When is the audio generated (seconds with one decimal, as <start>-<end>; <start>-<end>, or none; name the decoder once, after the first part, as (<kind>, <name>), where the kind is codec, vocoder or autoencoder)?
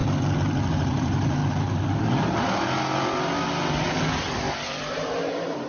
0.7-1.4 (vocoder, BigVGAN v2); 4.8-5.7